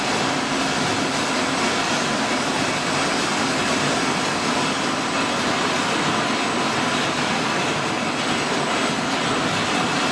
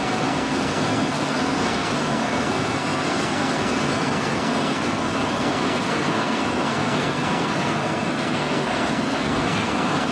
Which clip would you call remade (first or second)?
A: second